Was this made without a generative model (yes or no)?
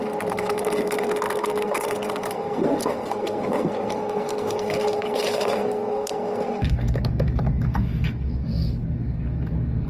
no